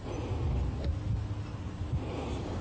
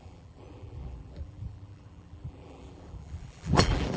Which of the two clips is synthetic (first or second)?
second